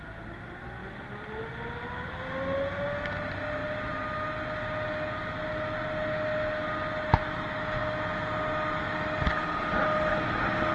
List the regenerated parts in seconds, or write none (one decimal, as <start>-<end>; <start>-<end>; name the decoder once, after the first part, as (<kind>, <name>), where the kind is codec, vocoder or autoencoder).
none